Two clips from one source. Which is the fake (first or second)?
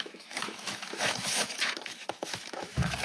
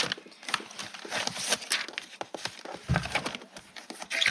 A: first